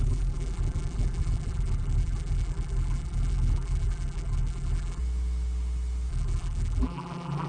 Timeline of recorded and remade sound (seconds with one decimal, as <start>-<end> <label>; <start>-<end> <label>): 0.0-5.0 remade; 5.0-6.1 recorded; 6.1-7.5 remade